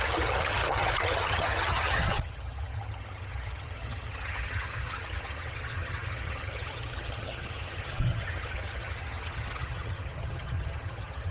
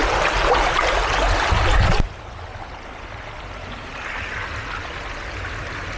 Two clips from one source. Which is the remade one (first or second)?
first